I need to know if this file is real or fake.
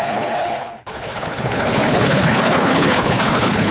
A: fake